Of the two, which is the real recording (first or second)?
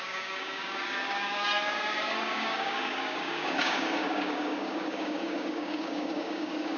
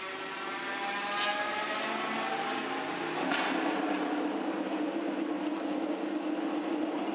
second